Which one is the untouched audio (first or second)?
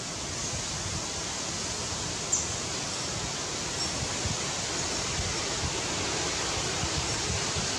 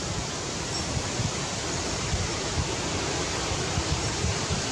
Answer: first